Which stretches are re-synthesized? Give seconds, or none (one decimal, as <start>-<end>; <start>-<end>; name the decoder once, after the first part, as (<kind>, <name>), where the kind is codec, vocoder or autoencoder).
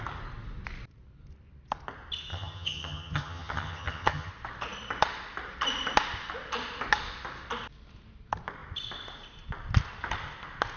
2.3-4.3 (vocoder, HiFi-GAN)